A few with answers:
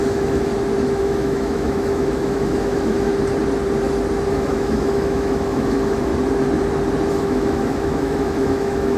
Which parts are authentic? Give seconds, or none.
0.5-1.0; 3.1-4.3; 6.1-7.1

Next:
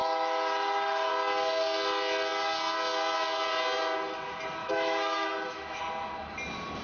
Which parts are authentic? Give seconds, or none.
1.1-4.6; 5.8-6.8

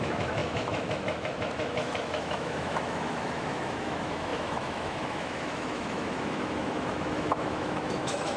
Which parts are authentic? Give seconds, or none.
none

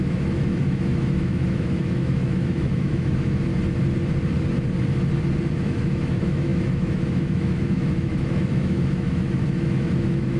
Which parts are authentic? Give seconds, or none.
3.5-5.5

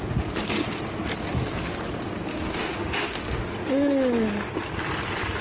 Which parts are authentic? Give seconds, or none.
0.0-2.3; 3.4-5.4

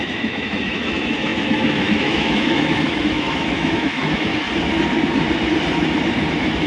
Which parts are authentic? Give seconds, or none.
4.3-6.3

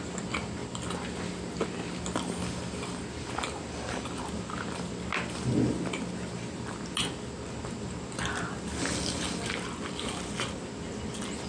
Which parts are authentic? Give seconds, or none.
0.0-11.5